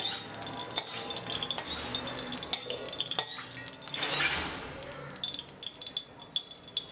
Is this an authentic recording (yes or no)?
yes